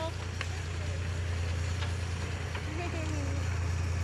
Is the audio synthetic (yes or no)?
no